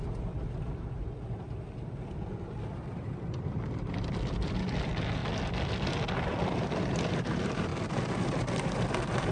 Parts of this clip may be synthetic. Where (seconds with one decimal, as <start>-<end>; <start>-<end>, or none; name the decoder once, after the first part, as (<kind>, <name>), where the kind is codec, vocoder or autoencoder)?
0.0-3.1 (vocoder, BigVGAN v2); 3.7-5.2; 6.9-7.7; 8.6-9.3